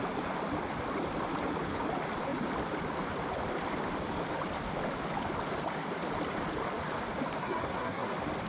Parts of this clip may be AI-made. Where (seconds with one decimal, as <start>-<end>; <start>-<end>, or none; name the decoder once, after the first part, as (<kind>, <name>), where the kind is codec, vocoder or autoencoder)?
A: 7.4-8.1 (codec, SNAC)